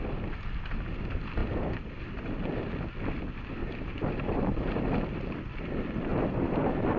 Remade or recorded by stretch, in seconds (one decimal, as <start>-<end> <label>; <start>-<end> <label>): 0.0-3.6 recorded; 3.6-4.8 remade; 4.8-6.1 recorded; 6.1-7.0 remade